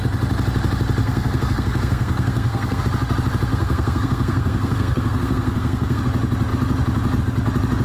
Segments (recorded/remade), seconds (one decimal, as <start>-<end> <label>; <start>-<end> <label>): 0.0-1.0 recorded; 1.0-2.8 remade; 2.8-3.5 recorded; 3.5-6.0 remade; 6.0-7.8 recorded